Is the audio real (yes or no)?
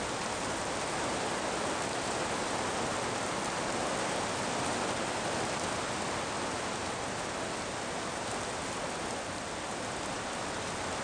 yes